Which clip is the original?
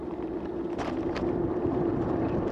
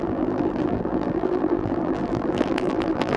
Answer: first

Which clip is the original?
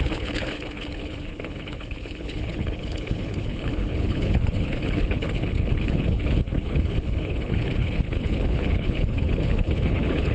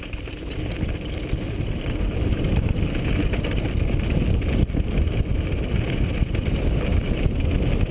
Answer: second